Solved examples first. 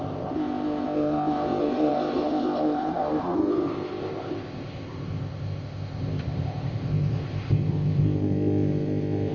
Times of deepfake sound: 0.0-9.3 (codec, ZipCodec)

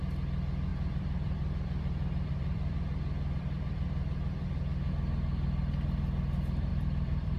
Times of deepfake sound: 0.7-4.9 (vocoder, BigVGAN v2); 6.7-7.4

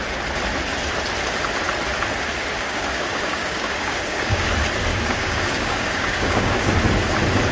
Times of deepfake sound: 2.5-4.5 (codec, DAC); 4.9-6.7

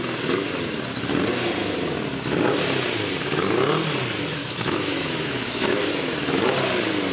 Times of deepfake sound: 4.4-5.9 (autoencoder, DAC-VAE)

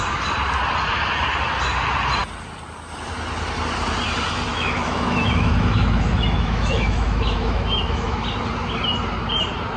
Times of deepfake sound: 4.5-8.2 (autoencoder, DAC-VAE)

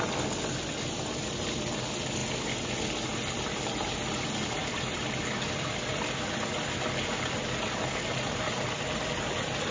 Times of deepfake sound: none

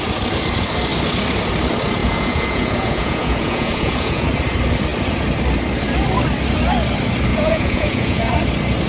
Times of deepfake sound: 2.0-4.3 (vocoder, Vocos); 7.3-8.3